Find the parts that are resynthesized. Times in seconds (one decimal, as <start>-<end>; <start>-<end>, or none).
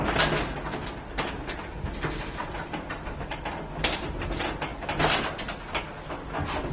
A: none